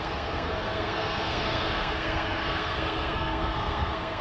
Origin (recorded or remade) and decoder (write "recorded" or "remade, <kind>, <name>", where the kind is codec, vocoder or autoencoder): remade, codec, SNAC